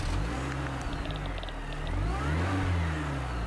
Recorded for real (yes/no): yes